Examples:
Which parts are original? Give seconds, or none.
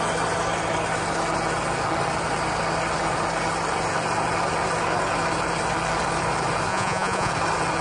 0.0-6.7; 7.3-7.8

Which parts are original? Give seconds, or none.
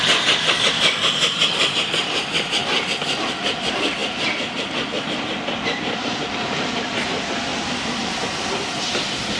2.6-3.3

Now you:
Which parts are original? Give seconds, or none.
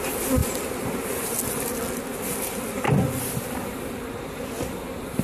0.0-5.2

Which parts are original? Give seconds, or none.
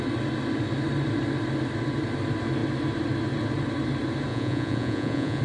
0.0-4.3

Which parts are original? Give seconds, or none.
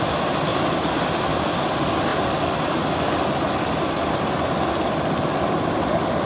0.0-6.3